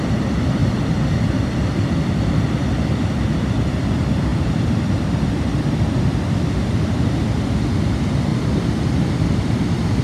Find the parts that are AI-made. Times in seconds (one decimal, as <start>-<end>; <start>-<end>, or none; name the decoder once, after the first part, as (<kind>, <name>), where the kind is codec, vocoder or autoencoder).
0.0-10.0 (vocoder, BigVGAN v2)